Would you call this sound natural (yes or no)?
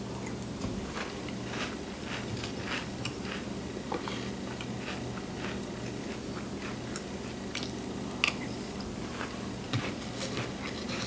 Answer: yes